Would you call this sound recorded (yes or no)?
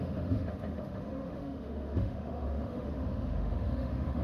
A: no